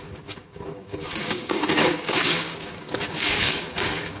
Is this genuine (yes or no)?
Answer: no